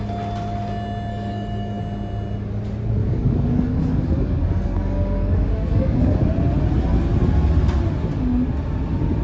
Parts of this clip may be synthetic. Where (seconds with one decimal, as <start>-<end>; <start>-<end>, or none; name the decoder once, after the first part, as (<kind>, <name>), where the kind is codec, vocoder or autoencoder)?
1.1-1.8 (codec, DAC); 3.0-6.3